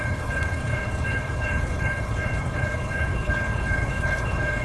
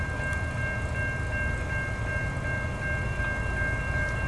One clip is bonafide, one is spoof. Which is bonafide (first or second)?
second